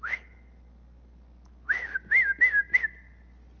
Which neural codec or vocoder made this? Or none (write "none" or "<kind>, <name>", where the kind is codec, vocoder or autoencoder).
none